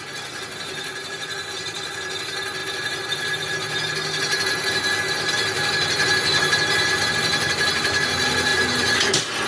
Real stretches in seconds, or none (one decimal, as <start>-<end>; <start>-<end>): 0.0-9.5